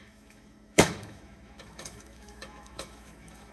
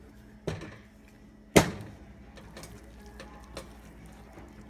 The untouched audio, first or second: second